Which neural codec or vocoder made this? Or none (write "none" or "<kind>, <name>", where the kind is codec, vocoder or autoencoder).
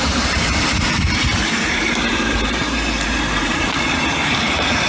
vocoder, BigVGAN v2